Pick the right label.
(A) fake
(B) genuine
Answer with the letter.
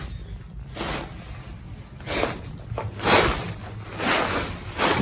B